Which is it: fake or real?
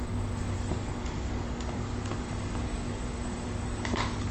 fake